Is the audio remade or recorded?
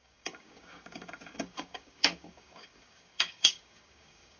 remade